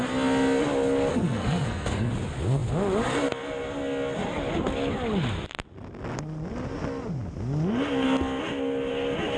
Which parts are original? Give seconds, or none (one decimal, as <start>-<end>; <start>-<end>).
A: 0.0-1.1; 2.1-9.4